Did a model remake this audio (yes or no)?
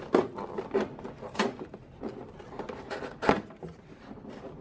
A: no